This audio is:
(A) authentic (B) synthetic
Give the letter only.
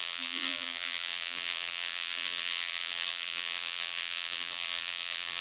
B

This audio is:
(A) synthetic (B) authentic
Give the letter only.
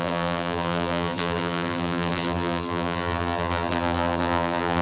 A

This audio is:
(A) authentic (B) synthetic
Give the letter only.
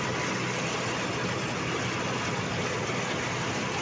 A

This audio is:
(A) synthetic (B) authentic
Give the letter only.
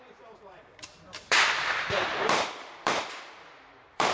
A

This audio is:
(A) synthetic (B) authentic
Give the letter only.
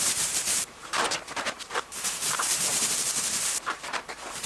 A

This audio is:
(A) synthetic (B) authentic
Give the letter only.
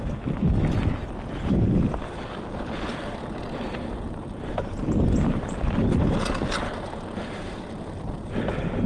A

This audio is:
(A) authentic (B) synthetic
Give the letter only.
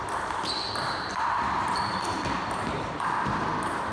B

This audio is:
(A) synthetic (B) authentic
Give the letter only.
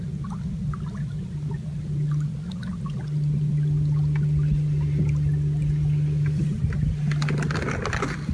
B